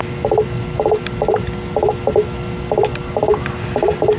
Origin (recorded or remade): recorded